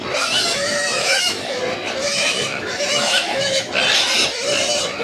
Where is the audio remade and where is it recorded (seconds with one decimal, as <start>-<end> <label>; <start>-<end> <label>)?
0.0-0.5 recorded; 0.5-1.6 remade; 1.6-2.0 recorded; 2.0-3.7 remade; 3.7-5.0 recorded